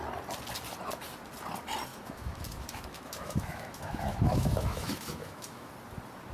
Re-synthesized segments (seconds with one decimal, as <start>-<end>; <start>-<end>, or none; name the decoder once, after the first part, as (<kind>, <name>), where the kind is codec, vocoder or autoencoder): 1.9-5.7 (autoencoder, DAC-VAE)